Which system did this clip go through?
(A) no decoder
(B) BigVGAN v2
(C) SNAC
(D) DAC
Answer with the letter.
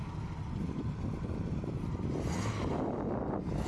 A